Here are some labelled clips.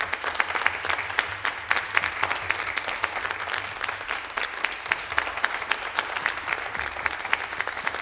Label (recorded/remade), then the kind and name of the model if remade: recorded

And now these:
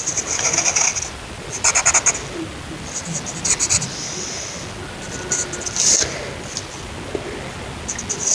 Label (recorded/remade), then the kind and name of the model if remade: recorded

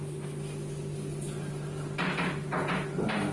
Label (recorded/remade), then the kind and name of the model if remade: recorded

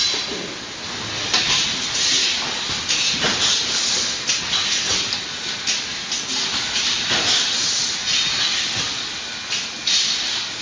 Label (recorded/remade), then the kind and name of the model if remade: recorded